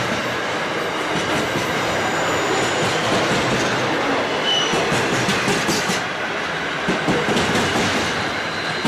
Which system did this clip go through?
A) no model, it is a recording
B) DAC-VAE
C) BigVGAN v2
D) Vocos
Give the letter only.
A